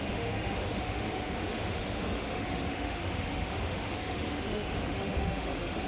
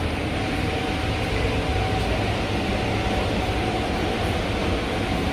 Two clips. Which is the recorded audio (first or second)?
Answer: second